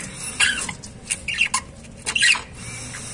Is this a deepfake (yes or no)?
no